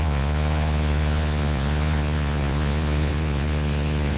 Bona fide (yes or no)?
no